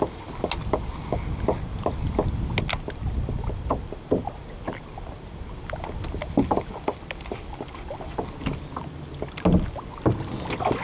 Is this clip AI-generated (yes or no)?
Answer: no